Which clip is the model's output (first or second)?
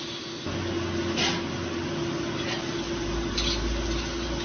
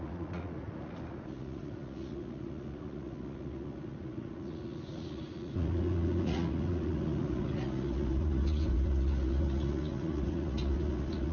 second